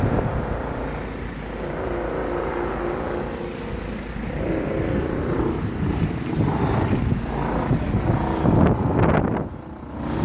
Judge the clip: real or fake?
real